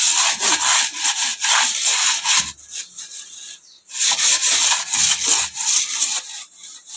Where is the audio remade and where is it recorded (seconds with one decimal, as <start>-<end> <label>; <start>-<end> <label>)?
0.0-7.0 recorded